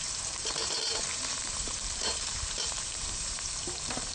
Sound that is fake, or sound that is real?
fake